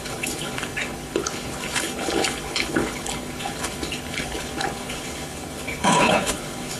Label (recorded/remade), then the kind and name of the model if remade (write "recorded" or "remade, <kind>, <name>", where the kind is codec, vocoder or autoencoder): remade, codec, HILCodec